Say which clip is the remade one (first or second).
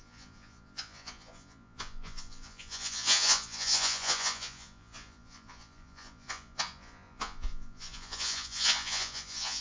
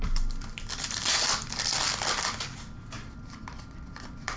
first